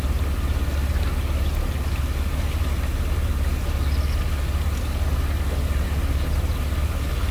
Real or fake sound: real